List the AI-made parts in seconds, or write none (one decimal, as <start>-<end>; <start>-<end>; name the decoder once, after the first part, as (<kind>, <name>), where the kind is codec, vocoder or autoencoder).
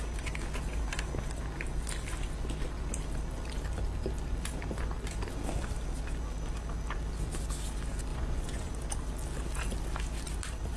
8.1-8.7 (vocoder, Vocos)